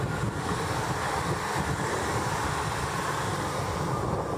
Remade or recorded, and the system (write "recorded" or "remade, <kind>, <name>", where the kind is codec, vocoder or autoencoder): recorded